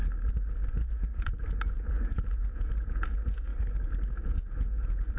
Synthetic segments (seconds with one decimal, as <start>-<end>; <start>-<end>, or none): 0.7-1.1; 1.7-3.5; 4.1-5.2